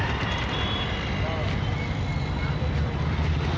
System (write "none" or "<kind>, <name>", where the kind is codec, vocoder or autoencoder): none